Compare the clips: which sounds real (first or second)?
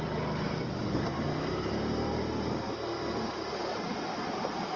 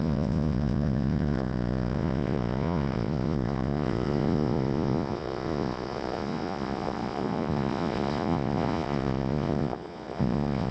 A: first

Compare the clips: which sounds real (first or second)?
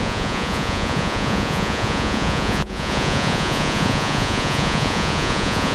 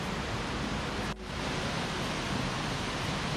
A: second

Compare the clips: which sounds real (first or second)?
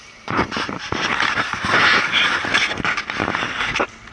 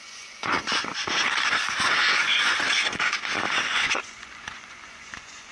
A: first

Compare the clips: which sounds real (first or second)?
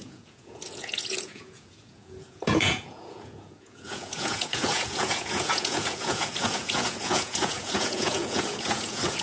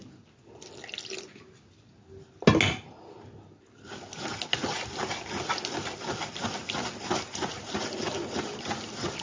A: second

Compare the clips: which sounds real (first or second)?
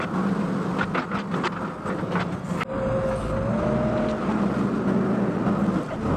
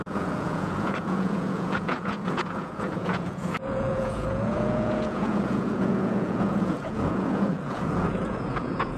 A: first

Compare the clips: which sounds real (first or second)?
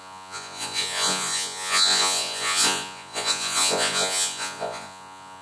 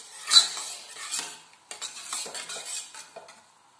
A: second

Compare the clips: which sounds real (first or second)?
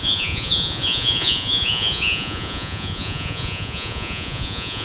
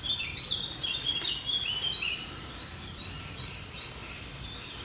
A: second